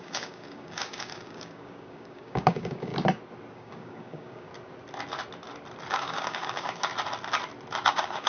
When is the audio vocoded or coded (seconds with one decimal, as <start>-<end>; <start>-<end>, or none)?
0.0-2.9; 3.5-4.5; 5.9-6.9; 7.9-8.3